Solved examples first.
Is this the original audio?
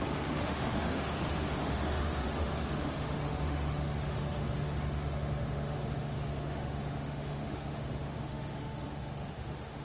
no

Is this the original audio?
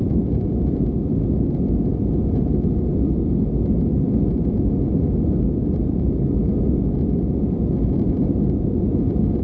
yes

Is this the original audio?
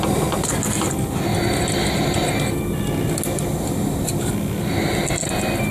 yes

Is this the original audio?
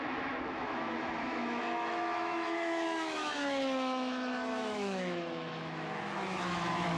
no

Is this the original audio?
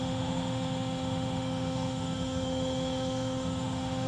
no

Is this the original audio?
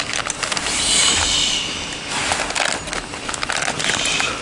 yes